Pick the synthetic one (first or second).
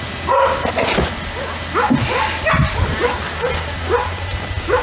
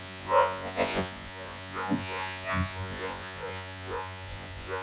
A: second